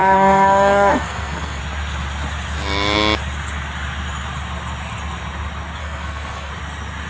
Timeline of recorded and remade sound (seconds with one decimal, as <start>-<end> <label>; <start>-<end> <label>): 0.0-1.6 remade; 1.6-5.8 recorded; 5.8-6.5 remade; 6.5-7.1 recorded